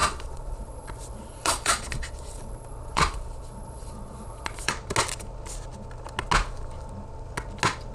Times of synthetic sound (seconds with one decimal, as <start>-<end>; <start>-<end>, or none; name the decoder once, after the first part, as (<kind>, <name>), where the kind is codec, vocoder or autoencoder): 0.0-4.7 (vocoder, Vocos)